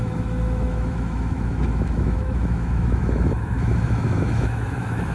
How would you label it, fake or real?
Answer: fake